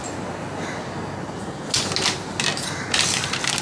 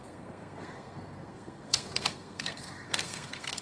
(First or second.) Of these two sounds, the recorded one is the first